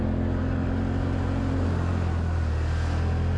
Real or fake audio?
real